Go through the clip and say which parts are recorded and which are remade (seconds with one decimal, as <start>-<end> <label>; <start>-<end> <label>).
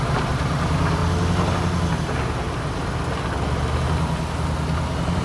0.0-1.0 remade; 1.0-1.9 recorded; 1.9-2.8 remade; 2.8-5.2 recorded